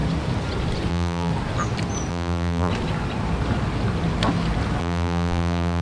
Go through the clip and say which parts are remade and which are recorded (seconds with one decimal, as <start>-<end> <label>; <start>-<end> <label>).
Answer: 0.0-0.9 recorded; 0.9-1.3 remade; 1.3-2.1 recorded; 2.1-2.7 remade; 2.7-4.8 recorded; 4.8-5.8 remade